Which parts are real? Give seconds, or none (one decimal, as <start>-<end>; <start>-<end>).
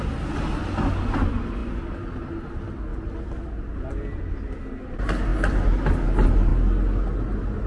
0.0-7.7